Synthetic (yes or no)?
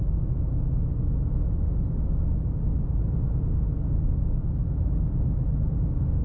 no